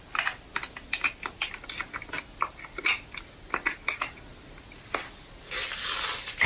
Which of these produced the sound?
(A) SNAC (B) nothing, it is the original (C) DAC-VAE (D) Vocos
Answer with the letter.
B